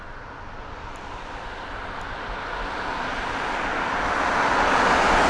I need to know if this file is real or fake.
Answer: real